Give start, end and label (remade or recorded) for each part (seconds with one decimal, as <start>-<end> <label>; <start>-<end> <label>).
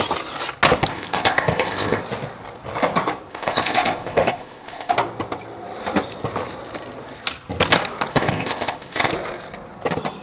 0.0-0.9 recorded; 0.9-2.0 remade; 2.0-3.3 recorded; 3.3-4.9 remade; 4.9-8.1 recorded; 8.1-9.1 remade; 9.1-10.2 recorded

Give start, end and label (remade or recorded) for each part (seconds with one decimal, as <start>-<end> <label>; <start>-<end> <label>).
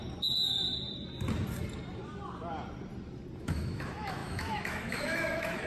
0.0-3.4 recorded; 3.4-5.7 remade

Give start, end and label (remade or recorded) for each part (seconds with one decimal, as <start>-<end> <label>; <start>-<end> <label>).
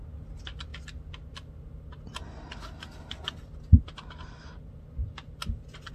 0.0-5.9 recorded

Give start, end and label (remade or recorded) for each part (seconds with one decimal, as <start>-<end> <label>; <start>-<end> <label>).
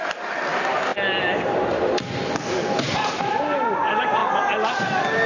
0.0-5.3 recorded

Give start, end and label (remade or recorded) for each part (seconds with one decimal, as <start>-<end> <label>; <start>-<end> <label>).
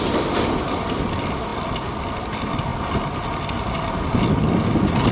0.0-2.7 remade; 2.7-4.3 recorded; 4.3-5.1 remade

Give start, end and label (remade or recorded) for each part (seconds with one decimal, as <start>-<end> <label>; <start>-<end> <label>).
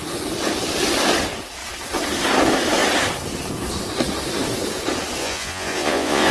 0.0-5.2 recorded; 5.2-6.3 remade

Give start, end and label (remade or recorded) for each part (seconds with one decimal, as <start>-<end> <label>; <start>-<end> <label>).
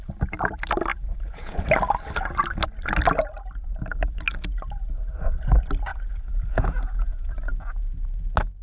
0.0-0.9 recorded; 0.9-1.7 remade; 1.7-5.9 recorded; 5.9-7.5 remade; 7.5-8.6 recorded